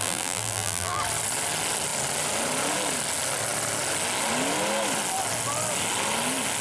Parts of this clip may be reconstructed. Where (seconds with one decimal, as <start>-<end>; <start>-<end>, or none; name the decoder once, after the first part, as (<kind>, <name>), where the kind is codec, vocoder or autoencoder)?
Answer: 0.0-1.0 (vocoder, BigVGAN v2)